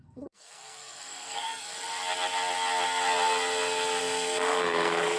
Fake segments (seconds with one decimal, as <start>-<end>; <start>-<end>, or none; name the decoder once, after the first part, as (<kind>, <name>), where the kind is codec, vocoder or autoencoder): 0.0-1.7 (codec, SNAC); 4.0-5.2